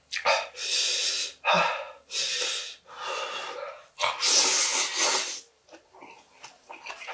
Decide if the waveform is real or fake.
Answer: real